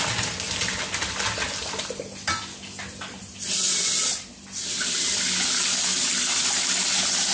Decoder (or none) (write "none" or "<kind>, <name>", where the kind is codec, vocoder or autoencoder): none